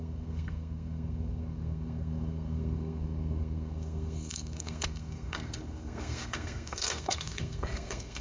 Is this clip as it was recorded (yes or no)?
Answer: no